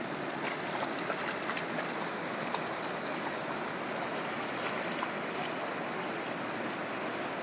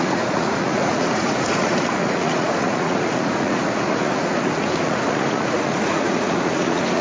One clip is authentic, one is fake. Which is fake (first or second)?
second